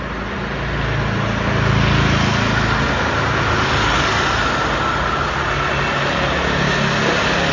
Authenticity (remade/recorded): recorded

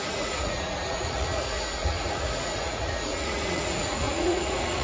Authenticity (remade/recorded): remade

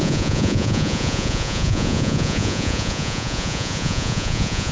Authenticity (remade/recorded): remade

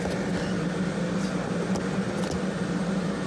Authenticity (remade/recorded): recorded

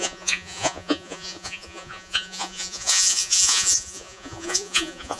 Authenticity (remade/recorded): remade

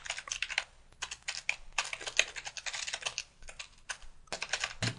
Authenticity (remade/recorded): recorded